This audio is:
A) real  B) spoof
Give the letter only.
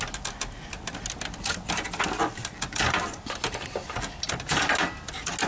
A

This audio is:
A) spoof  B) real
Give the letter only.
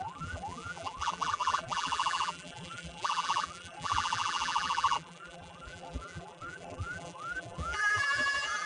A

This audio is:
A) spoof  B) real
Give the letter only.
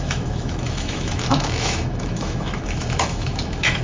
A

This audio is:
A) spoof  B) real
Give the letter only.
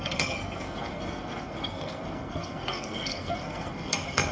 A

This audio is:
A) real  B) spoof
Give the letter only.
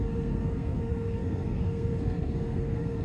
B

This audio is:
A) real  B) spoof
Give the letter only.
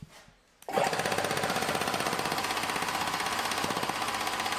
A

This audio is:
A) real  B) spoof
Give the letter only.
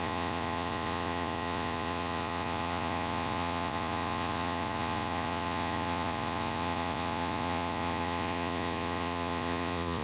B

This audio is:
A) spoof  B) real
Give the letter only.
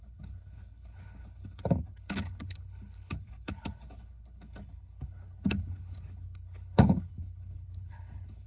A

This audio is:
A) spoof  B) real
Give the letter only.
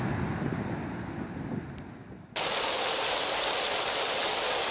B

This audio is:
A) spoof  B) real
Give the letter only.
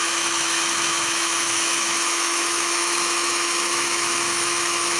A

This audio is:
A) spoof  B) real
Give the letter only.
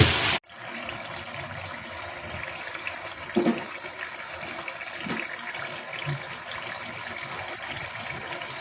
B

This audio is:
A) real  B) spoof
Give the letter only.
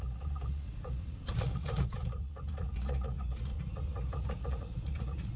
B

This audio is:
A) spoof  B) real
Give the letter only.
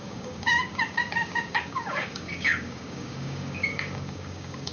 A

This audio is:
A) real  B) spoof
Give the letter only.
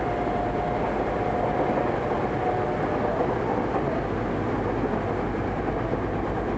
A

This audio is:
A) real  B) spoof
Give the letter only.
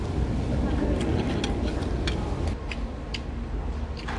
A